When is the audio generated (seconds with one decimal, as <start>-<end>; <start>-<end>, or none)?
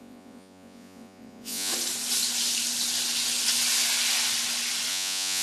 0.0-1.7; 4.9-5.4